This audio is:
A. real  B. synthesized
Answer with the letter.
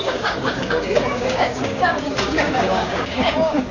B